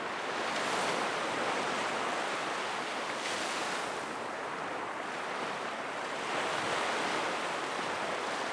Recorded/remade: recorded